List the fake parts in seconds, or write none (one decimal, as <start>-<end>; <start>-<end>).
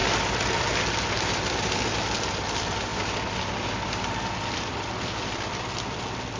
none